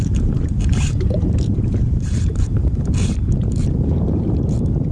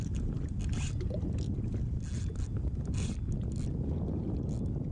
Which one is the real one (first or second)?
second